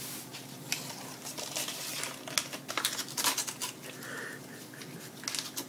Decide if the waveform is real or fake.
real